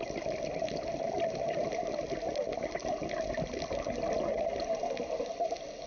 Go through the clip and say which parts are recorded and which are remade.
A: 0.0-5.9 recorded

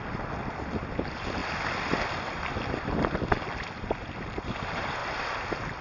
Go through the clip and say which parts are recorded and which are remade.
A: 0.0-5.8 recorded

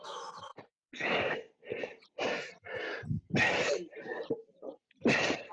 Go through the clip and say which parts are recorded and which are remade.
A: 0.0-0.9 remade; 0.9-4.2 recorded; 4.2-5.5 remade

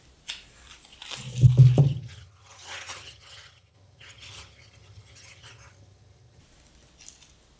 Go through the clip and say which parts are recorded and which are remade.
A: 0.0-1.8 recorded; 1.8-6.4 remade; 6.4-7.6 recorded

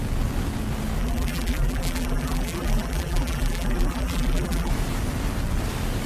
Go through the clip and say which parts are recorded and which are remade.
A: 0.0-1.0 recorded; 1.0-4.7 remade; 4.7-6.1 recorded

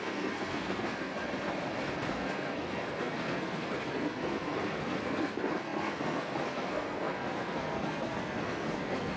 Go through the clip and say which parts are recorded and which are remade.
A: 0.0-1.2 remade; 1.2-2.1 recorded; 2.1-9.2 remade

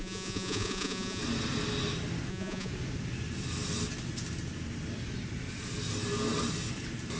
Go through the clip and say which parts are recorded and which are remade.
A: 0.0-1.2 remade; 1.2-2.3 recorded; 2.3-2.7 remade; 2.7-7.2 recorded